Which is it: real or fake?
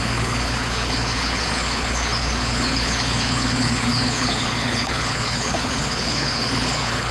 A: fake